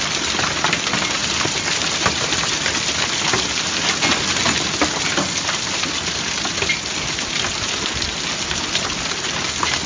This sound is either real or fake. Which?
real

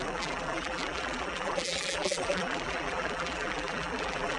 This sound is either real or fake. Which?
fake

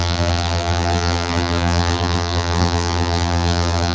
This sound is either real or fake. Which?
fake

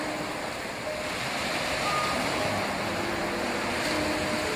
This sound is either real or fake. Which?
real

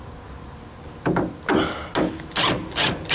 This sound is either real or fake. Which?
real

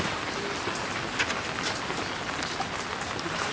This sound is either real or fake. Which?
real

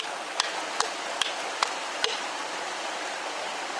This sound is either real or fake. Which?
real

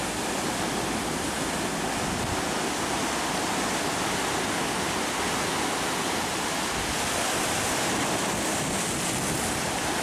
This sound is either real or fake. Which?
real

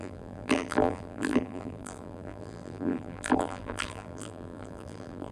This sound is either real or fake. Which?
fake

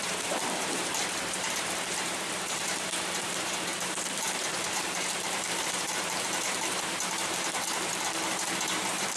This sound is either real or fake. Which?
fake